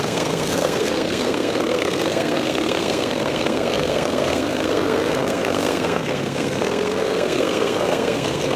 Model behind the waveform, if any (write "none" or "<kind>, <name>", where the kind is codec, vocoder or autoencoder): codec, SNAC